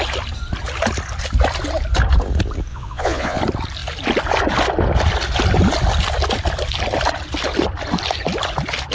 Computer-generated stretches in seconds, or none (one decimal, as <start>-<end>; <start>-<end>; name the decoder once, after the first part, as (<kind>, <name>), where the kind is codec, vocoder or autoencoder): 2.7-3.4 (vocoder, Vocos)